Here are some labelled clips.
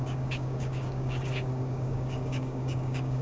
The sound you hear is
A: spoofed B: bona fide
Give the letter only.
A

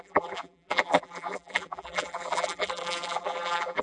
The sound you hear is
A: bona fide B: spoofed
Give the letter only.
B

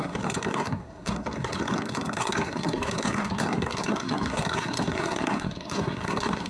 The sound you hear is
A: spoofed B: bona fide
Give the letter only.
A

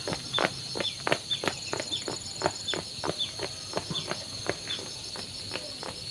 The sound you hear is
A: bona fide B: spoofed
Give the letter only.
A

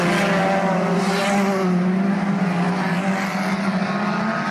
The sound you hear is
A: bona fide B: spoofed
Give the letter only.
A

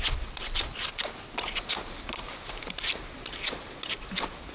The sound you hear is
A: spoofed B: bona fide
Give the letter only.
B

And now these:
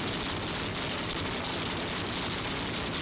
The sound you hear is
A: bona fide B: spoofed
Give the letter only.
A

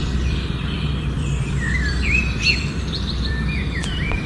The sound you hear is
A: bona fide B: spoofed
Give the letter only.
B